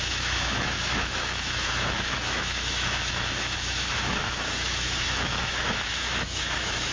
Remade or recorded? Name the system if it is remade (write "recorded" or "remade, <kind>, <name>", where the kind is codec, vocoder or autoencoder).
remade, autoencoder, DAC-VAE